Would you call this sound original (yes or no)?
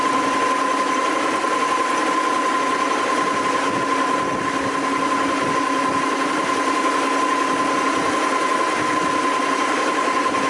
yes